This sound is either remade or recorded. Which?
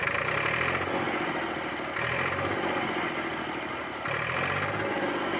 recorded